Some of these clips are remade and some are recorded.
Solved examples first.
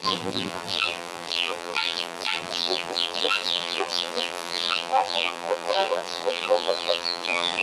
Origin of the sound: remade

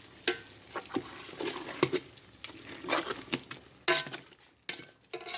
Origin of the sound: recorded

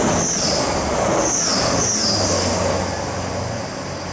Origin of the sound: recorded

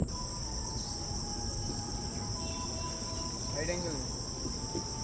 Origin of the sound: recorded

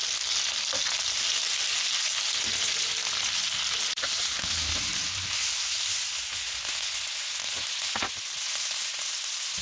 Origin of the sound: recorded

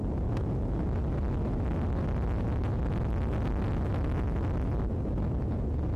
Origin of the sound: recorded